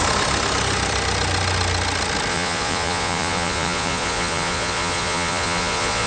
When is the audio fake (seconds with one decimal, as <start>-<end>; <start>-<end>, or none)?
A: 2.3-6.1